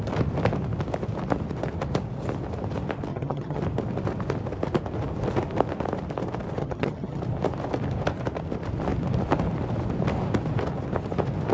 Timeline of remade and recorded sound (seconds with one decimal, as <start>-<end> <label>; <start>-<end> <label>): 0.0-3.1 recorded; 3.1-3.6 remade; 3.6-6.6 recorded; 6.6-7.2 remade; 7.2-11.5 recorded